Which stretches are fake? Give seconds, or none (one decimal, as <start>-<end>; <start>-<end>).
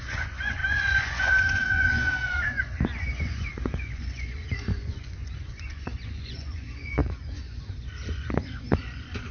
0.0-9.3